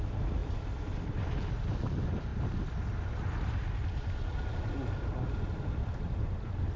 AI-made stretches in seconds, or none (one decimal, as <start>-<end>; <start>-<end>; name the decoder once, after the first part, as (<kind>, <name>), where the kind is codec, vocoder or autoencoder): none